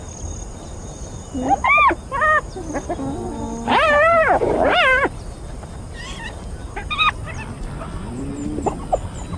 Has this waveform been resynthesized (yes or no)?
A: no